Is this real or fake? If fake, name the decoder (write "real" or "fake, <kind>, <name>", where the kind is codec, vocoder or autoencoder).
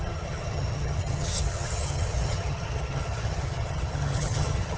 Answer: fake, vocoder, HiFi-GAN